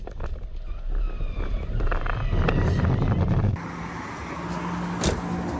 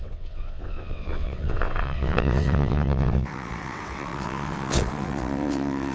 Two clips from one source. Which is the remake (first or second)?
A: second